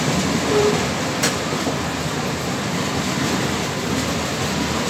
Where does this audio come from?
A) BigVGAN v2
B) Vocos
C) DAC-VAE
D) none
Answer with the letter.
D